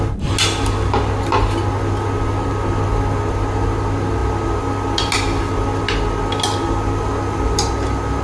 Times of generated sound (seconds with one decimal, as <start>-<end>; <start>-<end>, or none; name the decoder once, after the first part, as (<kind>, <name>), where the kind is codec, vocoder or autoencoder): none